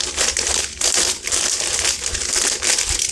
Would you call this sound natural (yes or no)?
yes